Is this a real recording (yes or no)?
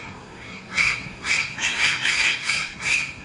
no